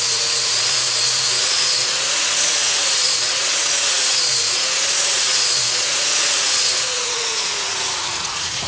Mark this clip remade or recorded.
remade